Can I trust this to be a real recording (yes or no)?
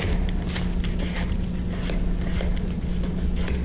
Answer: yes